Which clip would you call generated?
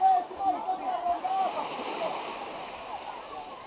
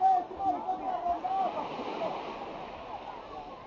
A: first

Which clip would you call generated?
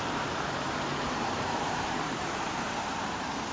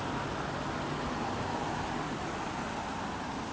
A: first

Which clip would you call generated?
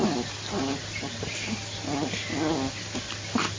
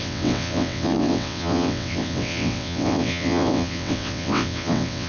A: second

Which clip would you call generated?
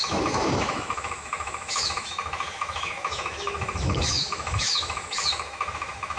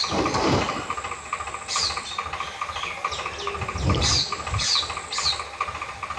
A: first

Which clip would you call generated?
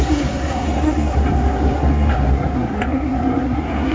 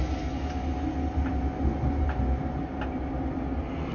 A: first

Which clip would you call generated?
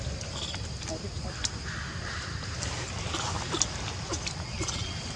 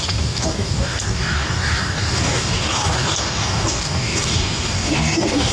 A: second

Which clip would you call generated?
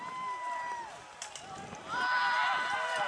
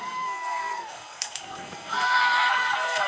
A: second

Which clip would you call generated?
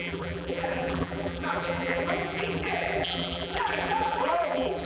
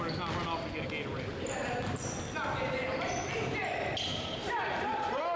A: first